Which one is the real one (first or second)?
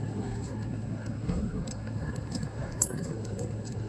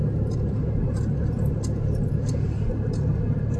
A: second